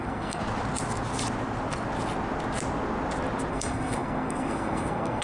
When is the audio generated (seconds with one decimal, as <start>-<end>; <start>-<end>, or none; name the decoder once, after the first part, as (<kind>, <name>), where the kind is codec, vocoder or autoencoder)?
0.0-0.4 (codec, SNAC); 3.5-5.2